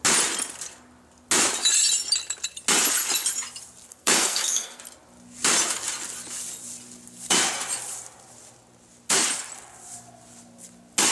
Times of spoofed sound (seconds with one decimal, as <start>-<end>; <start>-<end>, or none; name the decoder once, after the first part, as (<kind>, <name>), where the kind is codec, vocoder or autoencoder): 3.9-4.8 (codec, SNAC)